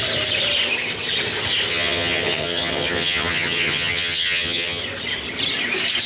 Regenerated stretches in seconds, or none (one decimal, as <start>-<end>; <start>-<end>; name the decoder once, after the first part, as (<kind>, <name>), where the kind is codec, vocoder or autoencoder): 1.7-4.8 (vocoder, HiFi-GAN)